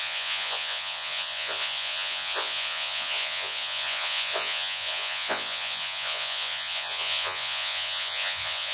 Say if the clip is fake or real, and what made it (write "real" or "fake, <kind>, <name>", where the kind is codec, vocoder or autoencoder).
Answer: fake, vocoder, Vocos